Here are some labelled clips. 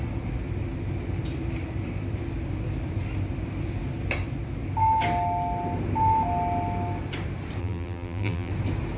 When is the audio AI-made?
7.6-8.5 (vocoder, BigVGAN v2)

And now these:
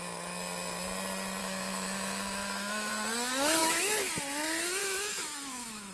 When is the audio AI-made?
1.4-2.9 (autoencoder, DAC-VAE); 3.6-4.1; 4.8-5.9

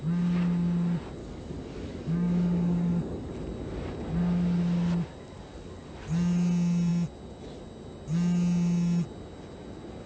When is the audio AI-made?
1.2-3.3 (codec, DAC)

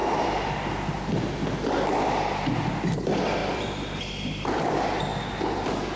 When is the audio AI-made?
0.0-0.6 (vocoder, BigVGAN v2); 3.4-4.0

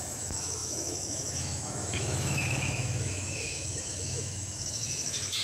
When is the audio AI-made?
0.0-5.4 (autoencoder, DAC-VAE)

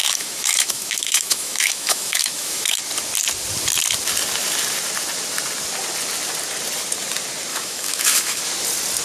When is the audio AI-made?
0.0-2.8 (autoencoder, DAC-VAE); 7.5-8.4

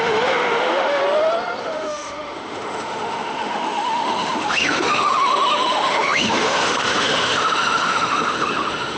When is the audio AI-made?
0.0-1.0 (autoencoder, DAC-VAE); 1.6-9.0

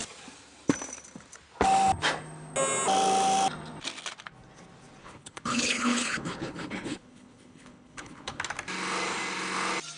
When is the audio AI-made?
5.0-8.4 (codec, HILCodec)